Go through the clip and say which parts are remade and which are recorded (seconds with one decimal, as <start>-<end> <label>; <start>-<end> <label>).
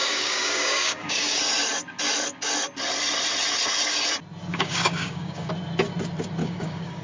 0.0-1.4 remade; 1.4-4.5 recorded; 4.5-5.5 remade; 5.5-6.4 recorded; 6.4-7.0 remade